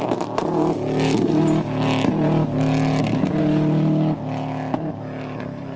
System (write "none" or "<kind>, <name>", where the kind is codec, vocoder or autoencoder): none